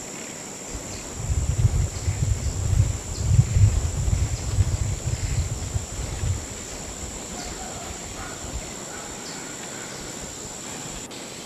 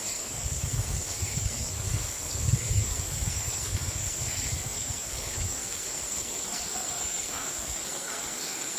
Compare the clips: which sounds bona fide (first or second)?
first